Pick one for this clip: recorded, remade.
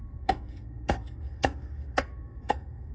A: remade